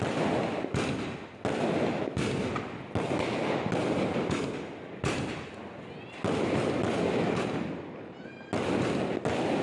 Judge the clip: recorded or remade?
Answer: recorded